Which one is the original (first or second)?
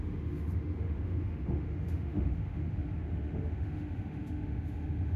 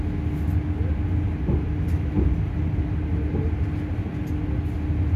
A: second